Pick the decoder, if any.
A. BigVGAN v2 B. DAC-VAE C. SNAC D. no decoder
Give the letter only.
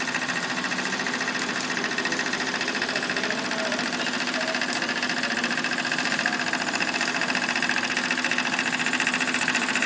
D